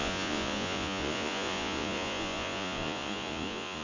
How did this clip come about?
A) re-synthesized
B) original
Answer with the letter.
A